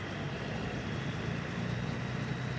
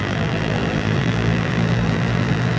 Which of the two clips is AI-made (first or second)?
second